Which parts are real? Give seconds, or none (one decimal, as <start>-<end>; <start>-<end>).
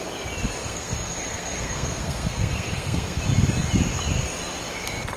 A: 0.0-0.6; 3.2-5.2